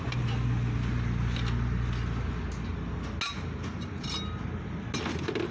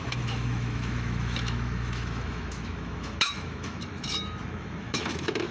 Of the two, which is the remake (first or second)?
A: second